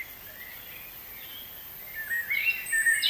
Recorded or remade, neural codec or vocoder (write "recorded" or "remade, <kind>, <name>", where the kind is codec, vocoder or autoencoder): recorded